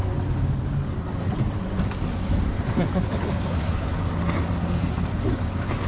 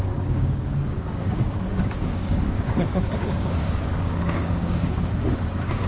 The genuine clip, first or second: first